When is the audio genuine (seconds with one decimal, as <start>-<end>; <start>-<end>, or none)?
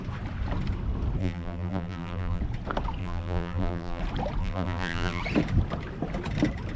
0.0-1.2; 2.4-3.0; 4.0-4.4; 5.2-6.8